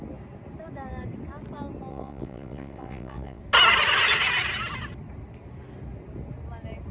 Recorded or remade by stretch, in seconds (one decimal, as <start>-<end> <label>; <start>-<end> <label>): 0.0-1.9 recorded; 1.9-3.4 remade; 3.4-6.9 recorded